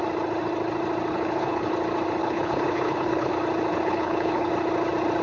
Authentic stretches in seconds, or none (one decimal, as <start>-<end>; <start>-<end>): 0.0-1.1; 1.7-2.2; 3.3-3.7; 4.5-5.2